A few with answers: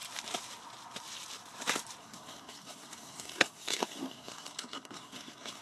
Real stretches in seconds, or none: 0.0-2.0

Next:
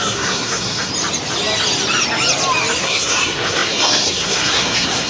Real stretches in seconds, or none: 0.9-2.8

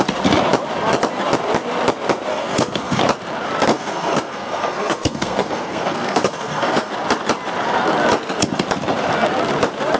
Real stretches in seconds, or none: 0.0-2.3; 3.0-3.7; 6.9-10.0